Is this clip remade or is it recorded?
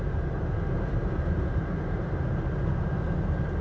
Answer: remade